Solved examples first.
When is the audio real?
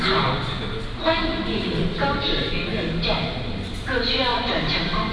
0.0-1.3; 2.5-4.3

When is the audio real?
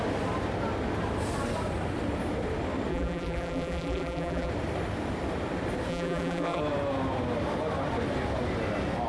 0.0-2.9; 4.5-5.9; 6.6-9.1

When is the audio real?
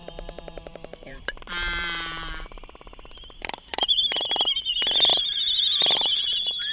4.0-5.1; 6.2-6.7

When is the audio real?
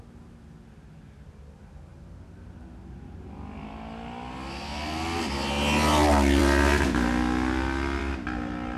0.0-8.8